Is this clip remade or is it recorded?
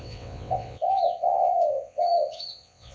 remade